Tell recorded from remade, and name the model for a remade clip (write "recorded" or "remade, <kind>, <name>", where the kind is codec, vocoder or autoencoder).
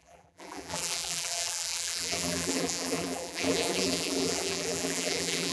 remade, vocoder, BigVGAN v2